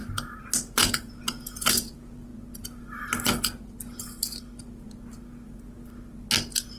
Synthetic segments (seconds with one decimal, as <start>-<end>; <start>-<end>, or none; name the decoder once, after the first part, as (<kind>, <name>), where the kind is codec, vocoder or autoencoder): 0.6-2.3 (vocoder, Vocos)

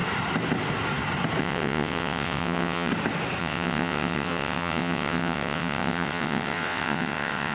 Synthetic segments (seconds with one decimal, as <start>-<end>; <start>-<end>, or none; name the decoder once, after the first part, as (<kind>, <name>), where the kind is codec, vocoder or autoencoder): 1.4-2.9 (vocoder, WaveNeXt); 3.4-7.5

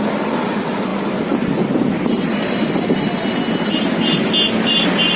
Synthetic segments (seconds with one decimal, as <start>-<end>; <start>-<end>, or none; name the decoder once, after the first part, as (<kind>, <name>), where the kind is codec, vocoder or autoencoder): none

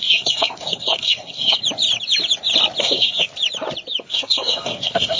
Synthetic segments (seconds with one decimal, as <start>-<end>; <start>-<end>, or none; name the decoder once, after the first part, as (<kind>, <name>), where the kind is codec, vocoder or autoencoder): 0.0-1.6 (codec, SNAC); 2.8-3.3; 4.0-5.2

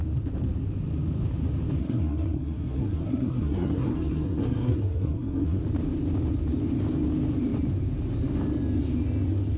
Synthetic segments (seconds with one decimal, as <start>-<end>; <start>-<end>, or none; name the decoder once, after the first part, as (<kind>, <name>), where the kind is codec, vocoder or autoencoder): 1.8-5.6 (codec, SNAC)